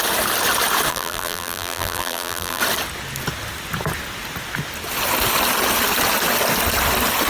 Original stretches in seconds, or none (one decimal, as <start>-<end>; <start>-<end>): 0.0-0.9; 2.6-7.3

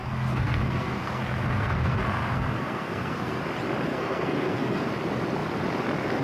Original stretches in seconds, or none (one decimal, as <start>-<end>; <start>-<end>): 3.4-3.9; 4.9-6.2

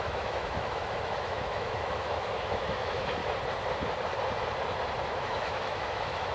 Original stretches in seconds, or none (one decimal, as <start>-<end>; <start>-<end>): 3.2-5.0

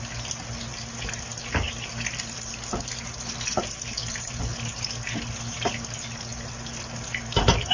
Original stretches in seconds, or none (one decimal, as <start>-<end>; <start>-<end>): 0.0-0.7; 4.4-6.3; 7.2-7.7

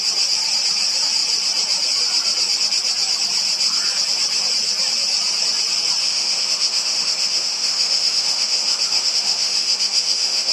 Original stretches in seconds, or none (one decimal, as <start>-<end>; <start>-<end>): 0.0-6.0

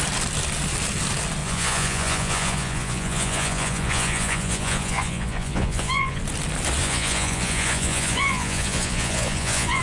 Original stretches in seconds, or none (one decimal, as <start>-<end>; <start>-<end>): 0.0-1.4; 6.2-6.8

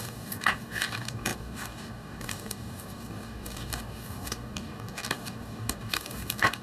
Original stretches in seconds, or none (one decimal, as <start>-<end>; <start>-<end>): none